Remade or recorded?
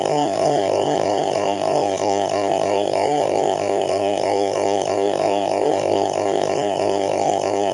remade